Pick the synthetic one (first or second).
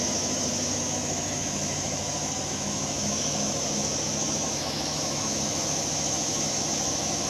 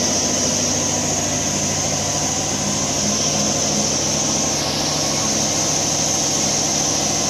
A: first